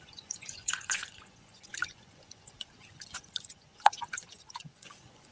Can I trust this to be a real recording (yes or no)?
no